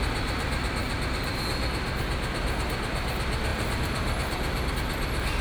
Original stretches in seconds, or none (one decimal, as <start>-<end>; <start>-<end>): 0.0-0.8; 1.4-3.5; 4.7-5.4